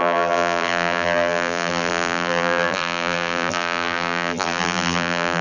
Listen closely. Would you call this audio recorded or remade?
remade